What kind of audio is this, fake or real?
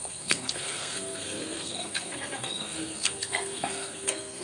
fake